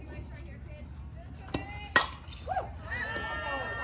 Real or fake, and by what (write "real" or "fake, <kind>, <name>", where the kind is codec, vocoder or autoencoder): real